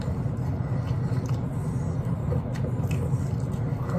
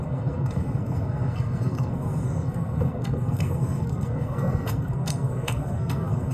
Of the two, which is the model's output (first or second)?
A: second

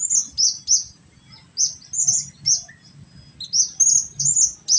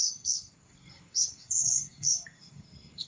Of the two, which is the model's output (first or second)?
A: second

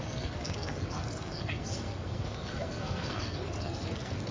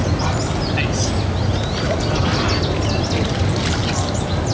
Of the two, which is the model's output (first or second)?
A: first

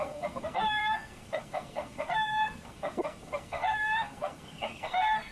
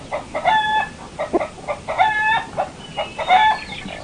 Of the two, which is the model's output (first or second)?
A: first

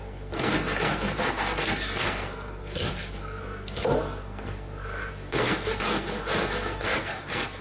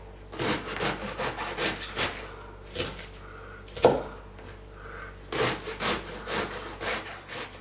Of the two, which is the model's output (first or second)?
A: first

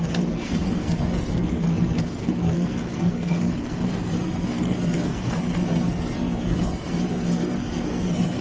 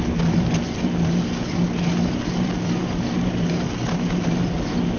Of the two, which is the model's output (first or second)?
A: first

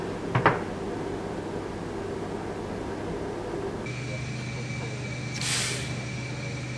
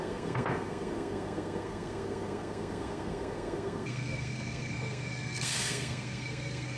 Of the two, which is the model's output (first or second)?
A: second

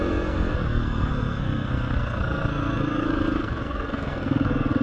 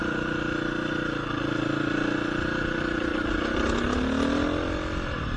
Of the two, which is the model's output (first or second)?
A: first